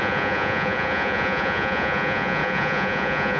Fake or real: fake